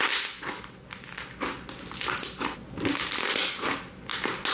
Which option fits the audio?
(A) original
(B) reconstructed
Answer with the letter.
A